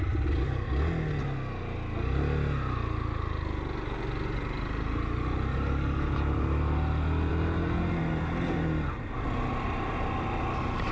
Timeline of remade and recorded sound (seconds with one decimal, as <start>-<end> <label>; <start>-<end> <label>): 0.0-10.9 recorded